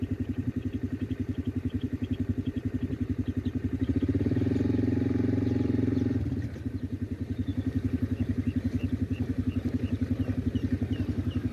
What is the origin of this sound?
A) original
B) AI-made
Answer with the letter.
B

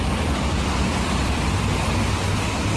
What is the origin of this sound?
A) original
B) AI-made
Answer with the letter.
A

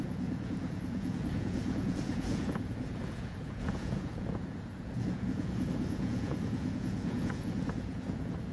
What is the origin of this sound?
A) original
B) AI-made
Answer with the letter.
B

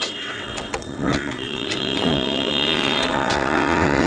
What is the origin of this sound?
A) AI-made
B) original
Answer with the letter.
A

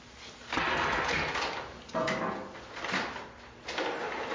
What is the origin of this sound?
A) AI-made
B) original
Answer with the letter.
B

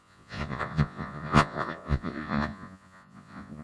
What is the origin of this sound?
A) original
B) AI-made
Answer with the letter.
B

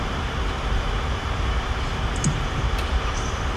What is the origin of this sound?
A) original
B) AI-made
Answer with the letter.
B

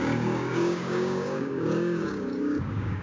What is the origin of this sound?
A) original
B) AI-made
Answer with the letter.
B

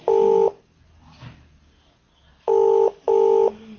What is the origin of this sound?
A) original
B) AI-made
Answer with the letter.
A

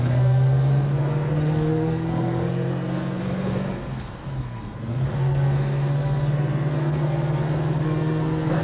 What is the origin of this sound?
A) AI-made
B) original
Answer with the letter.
A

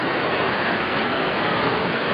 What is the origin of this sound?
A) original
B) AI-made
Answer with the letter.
B